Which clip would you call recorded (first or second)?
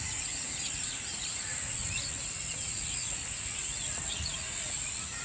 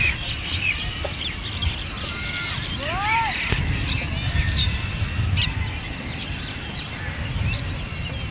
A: second